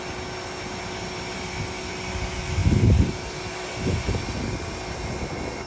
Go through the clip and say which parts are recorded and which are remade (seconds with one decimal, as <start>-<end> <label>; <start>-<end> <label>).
0.0-5.7 recorded